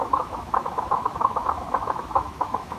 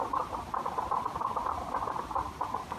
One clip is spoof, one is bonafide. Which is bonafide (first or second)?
second